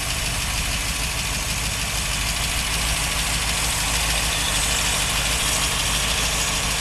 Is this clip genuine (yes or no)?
yes